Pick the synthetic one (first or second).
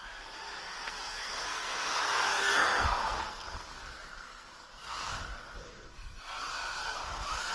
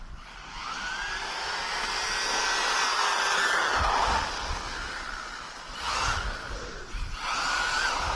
first